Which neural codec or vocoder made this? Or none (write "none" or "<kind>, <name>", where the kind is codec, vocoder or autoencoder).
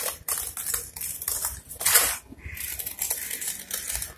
none